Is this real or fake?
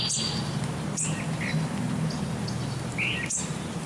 real